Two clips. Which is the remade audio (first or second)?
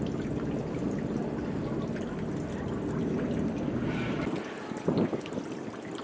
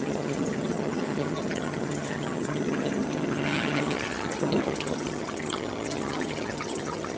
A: second